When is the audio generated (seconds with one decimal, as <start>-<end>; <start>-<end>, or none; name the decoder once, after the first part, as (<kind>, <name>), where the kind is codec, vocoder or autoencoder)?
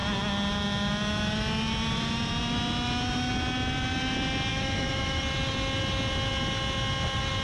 4.5-5.2 (autoencoder, DAC-VAE)